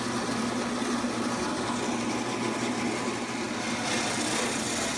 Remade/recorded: recorded